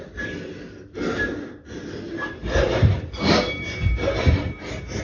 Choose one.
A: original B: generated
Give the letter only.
B